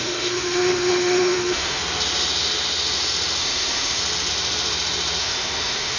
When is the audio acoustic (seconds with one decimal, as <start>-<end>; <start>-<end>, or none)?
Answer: 1.8-3.4; 4.0-5.2